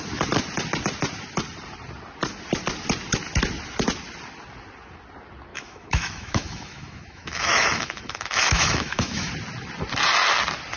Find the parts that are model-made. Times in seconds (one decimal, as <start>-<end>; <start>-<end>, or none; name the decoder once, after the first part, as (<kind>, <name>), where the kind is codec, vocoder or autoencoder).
5.5-9.3 (autoencoder, DAC-VAE)